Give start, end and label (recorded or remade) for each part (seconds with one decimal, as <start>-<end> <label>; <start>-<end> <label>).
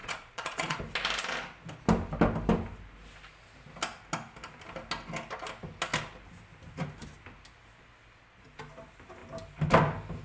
0.0-0.8 remade; 0.8-10.2 recorded